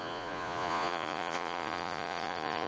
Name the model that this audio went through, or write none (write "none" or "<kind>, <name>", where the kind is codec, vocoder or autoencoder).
vocoder, Vocos